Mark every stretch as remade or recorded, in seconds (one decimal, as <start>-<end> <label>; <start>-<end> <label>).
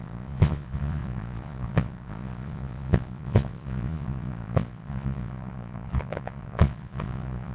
0.0-7.5 remade